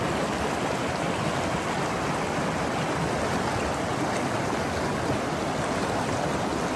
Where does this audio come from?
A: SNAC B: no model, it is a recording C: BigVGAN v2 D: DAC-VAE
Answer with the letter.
B